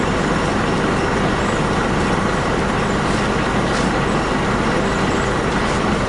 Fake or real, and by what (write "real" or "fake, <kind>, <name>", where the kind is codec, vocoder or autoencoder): real